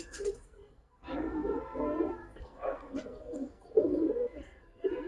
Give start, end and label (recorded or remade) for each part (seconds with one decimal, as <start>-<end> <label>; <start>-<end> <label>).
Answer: 0.0-5.1 remade